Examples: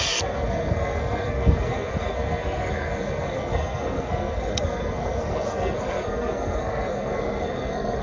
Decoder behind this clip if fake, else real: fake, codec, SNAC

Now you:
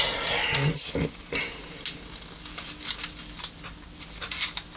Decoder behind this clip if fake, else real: real